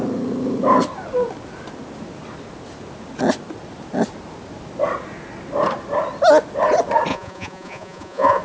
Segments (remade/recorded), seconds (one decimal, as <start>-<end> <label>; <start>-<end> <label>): 0.0-7.1 recorded; 7.1-8.4 remade